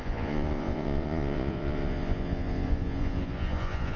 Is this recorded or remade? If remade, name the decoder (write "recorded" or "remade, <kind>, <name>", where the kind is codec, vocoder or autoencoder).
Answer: remade, vocoder, Vocos